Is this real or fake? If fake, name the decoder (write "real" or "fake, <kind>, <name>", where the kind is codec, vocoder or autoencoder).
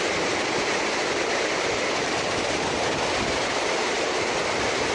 real